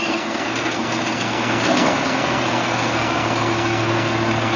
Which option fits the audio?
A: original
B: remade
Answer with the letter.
B